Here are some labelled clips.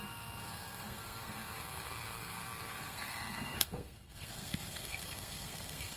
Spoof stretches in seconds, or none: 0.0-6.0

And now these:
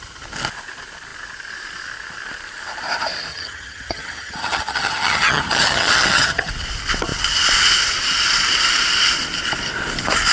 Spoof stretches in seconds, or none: 3.3-6.5

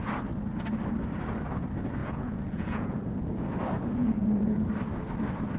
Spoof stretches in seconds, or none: 2.0-3.2; 4.0-4.7

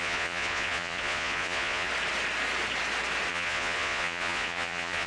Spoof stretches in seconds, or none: 0.0-1.9; 3.3-5.1

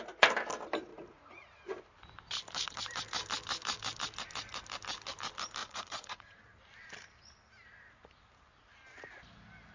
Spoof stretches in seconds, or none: 0.9-1.8; 5.6-6.4

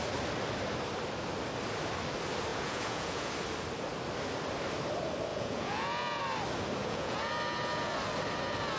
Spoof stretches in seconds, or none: 2.5-3.3; 5.3-6.2; 6.8-7.3

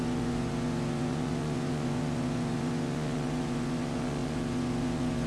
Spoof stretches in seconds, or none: 0.0-5.3